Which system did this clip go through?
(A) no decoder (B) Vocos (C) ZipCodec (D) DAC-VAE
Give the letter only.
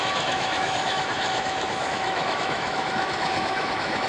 D